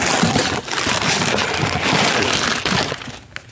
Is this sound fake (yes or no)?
no